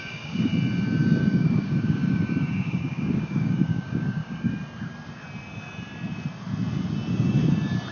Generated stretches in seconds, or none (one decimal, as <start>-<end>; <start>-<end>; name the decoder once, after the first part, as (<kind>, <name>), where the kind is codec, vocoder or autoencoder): 0.0-0.5 (codec, DAC); 1.2-4.5

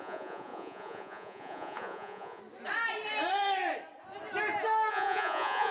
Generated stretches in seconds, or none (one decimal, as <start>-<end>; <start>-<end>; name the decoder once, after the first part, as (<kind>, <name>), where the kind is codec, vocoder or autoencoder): 0.0-2.4 (vocoder, Vocos); 4.9-5.7

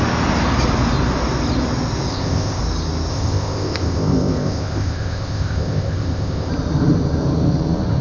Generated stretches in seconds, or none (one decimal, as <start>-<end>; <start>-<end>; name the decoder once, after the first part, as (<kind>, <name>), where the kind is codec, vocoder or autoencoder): 2.1-2.6 (codec, ZipCodec); 3.1-6.5